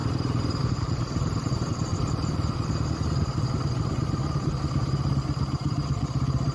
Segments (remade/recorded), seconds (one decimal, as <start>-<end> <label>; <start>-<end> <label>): 0.0-1.9 remade; 1.9-3.8 recorded; 3.8-6.5 remade